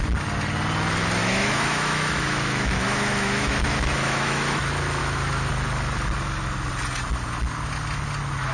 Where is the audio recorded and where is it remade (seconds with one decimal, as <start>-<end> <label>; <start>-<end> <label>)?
0.0-1.2 recorded; 1.2-4.6 remade; 4.6-5.0 recorded; 5.0-5.5 remade; 5.5-8.5 recorded